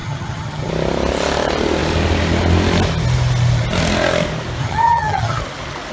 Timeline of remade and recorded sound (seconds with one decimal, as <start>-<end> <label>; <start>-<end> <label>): 0.0-0.7 remade; 0.7-4.6 recorded; 4.6-5.4 remade; 5.4-5.9 recorded